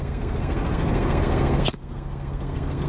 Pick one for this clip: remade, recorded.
remade